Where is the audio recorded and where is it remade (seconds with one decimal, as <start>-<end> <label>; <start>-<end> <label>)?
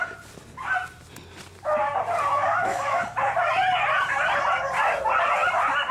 0.0-2.3 recorded; 2.3-3.0 remade; 3.0-5.9 recorded